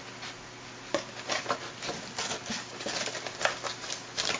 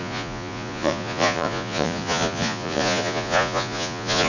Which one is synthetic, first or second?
second